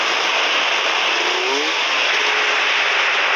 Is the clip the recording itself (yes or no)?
yes